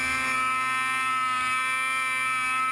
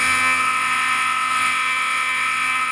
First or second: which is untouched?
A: first